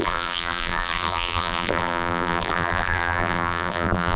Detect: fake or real fake